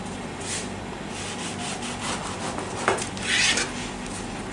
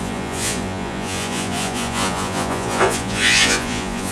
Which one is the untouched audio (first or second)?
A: first